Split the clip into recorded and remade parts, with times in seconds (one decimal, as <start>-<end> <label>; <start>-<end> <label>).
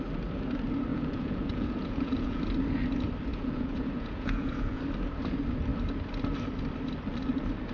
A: 0.0-0.9 recorded; 0.9-2.4 remade; 2.4-3.3 recorded; 3.3-4.8 remade; 4.8-7.7 recorded